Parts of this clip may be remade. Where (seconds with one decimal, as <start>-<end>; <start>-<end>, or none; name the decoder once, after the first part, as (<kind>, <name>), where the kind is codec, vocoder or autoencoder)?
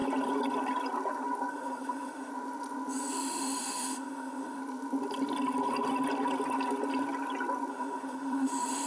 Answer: 1.5-2.3 (autoencoder, DAC-VAE); 3.1-4.6; 7.7-8.9